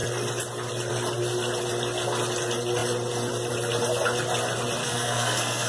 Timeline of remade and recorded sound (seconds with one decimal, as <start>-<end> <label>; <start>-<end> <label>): 0.0-4.8 recorded; 4.8-5.7 remade